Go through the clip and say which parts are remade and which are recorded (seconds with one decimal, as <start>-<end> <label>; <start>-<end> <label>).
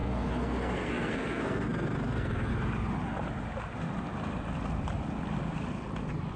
0.0-2.5 remade; 2.5-6.4 recorded